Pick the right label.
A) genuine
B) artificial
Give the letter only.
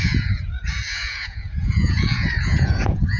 B